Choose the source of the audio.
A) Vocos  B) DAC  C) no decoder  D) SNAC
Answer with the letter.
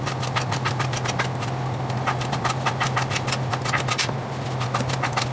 C